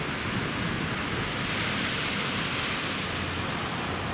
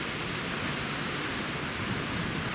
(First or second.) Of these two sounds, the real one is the first